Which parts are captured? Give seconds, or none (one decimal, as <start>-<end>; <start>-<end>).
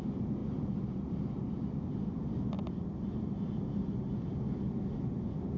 0.0-5.6